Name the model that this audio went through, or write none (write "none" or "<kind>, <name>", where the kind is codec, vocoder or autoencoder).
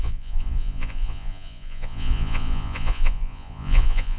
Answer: vocoder, Vocos